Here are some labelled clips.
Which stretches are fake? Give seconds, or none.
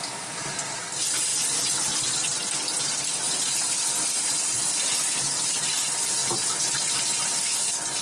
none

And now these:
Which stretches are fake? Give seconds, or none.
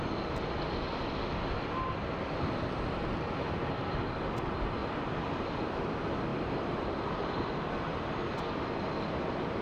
4.8-5.6 (vocoder, BigVGAN v2); 6.3-7.7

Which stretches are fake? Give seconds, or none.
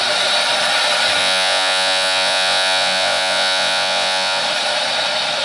1.2-4.4 (vocoder, Vocos)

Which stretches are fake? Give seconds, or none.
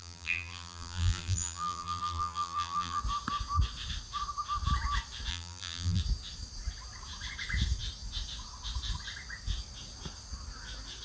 0.0-3.0 (vocoder, BigVGAN v2); 5.3-6.0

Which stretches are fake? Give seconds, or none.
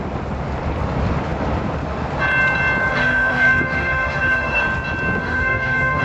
2.9-4.6 (autoencoder, DAC-VAE); 5.2-6.0